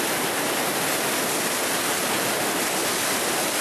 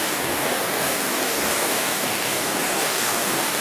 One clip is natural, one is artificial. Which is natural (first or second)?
first